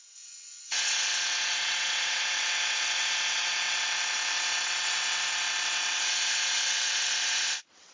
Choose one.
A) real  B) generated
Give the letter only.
B